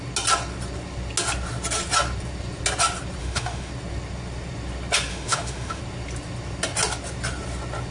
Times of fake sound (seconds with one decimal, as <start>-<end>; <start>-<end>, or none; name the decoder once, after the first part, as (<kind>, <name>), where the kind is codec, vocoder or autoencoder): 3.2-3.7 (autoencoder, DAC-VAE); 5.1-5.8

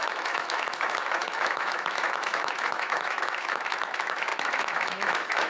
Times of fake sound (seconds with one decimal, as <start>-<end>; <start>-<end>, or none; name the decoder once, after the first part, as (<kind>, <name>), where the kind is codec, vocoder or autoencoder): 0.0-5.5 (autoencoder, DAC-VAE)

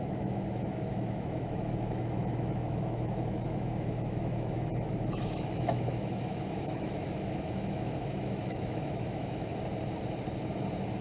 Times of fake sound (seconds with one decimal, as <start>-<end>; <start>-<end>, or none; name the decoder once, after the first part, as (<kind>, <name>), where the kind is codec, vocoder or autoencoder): 0.0-9.5 (autoencoder, DAC-VAE)

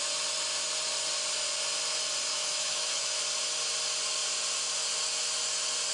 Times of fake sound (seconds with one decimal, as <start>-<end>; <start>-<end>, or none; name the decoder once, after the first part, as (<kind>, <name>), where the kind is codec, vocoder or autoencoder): 2.3-3.2 (autoencoder, DAC-VAE)

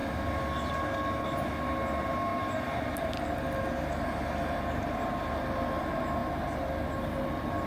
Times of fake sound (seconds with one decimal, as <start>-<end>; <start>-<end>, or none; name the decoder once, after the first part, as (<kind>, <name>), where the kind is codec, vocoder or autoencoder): none

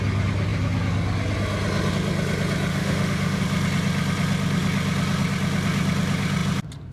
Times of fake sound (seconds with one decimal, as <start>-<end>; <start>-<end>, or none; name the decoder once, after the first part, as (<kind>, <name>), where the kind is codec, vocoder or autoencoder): 2.7-3.4 (autoencoder, DAC-VAE)